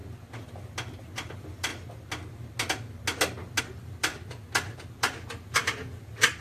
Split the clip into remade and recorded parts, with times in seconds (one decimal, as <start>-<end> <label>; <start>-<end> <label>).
0.0-1.0 recorded; 1.0-1.7 remade; 1.7-3.6 recorded; 3.6-4.1 remade; 4.1-4.9 recorded; 4.9-6.4 remade